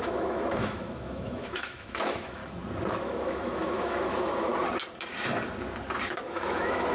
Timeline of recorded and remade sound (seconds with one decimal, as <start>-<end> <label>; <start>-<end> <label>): 0.0-2.4 remade; 2.4-2.9 recorded; 2.9-4.5 remade; 4.5-6.1 recorded; 6.1-6.9 remade